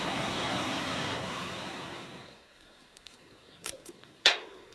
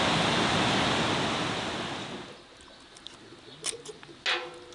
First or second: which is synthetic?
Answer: first